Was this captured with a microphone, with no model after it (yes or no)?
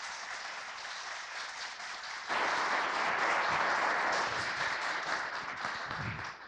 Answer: yes